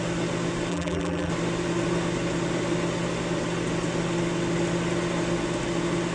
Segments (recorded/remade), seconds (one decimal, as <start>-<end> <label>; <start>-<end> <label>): 0.0-0.7 recorded; 0.7-1.3 remade; 1.3-6.1 recorded